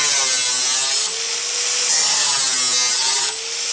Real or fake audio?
real